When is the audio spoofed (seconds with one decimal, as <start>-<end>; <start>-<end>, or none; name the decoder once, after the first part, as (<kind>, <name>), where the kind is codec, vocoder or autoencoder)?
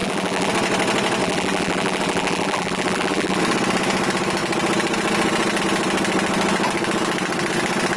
0.0-0.5 (vocoder, BigVGAN v2); 1.2-3.4